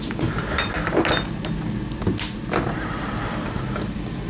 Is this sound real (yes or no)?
yes